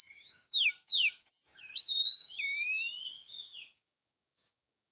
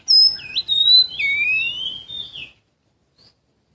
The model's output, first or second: first